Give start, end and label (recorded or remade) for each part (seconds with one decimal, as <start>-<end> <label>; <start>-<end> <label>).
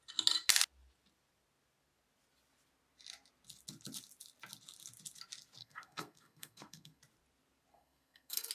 0.0-5.6 recorded; 5.6-7.0 remade; 7.0-7.7 recorded; 7.7-8.5 remade